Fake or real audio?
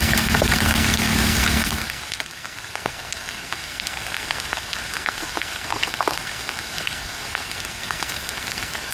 fake